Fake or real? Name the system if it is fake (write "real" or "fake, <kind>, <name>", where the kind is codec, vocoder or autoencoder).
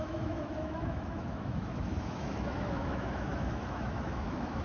fake, autoencoder, DAC-VAE